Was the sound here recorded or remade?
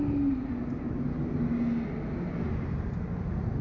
recorded